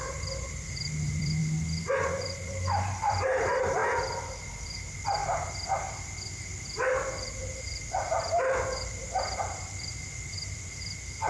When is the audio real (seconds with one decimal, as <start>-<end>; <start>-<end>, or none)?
1.4-2.0; 3.8-4.5